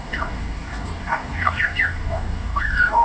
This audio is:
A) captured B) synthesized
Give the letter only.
B